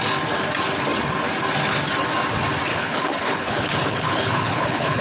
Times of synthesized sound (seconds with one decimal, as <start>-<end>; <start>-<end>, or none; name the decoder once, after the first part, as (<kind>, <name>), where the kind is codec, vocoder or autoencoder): 2.7-5.0 (codec, HILCodec)